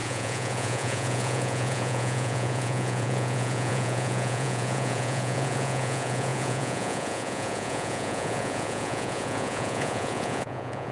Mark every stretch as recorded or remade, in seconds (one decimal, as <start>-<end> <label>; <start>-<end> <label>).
0.0-10.9 remade